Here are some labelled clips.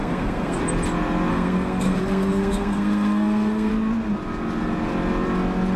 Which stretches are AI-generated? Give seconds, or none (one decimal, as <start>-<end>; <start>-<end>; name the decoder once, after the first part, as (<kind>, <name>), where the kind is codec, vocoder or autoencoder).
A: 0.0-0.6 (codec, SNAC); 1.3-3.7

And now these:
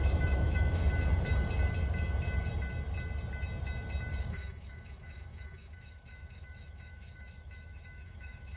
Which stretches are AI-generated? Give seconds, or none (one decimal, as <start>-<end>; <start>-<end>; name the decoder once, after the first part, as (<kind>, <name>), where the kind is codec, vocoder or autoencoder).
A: 0.0-0.8 (autoencoder, DAC-VAE); 4.2-8.6

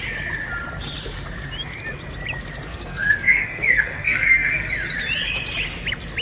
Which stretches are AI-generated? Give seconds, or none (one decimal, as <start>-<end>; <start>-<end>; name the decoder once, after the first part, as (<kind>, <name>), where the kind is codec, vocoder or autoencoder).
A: 2.7-4.7 (codec, SNAC)

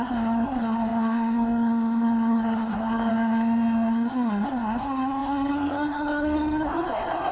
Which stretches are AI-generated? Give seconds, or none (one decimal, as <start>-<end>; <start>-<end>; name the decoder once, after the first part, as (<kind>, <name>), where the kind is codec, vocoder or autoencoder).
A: 0.0-7.3 (codec, SNAC)